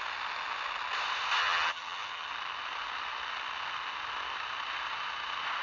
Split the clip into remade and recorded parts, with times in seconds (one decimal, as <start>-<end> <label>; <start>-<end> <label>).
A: 0.0-1.4 recorded; 1.4-2.3 remade; 2.3-5.6 recorded